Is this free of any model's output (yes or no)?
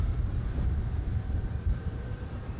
no